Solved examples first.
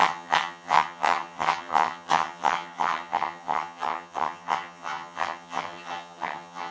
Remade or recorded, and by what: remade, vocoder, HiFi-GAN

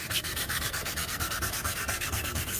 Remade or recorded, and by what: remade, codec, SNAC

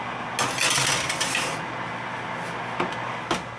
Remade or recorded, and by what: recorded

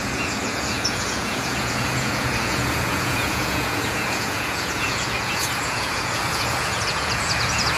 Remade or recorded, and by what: remade, vocoder, Vocos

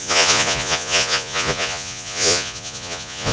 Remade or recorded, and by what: remade, vocoder, Vocos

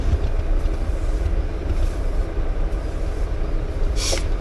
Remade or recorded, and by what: recorded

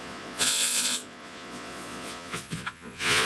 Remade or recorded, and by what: remade, vocoder, Vocos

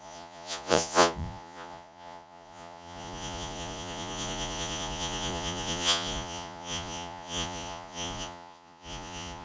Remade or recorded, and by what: remade, vocoder, Vocos